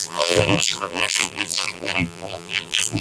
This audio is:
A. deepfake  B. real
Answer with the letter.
A